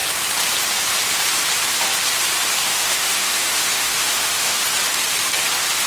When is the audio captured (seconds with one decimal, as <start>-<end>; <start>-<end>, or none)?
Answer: 0.0-2.6; 4.6-5.9